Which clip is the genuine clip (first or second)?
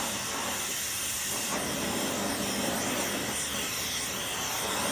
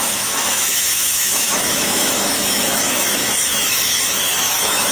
first